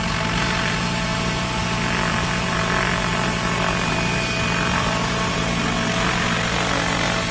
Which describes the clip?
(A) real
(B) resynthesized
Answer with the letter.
A